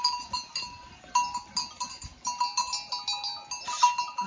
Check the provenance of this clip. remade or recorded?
recorded